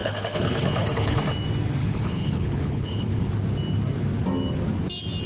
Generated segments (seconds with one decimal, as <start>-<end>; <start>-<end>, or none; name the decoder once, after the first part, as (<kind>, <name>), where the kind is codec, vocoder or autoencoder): 0.0-1.2 (codec, HILCodec); 1.8-3.3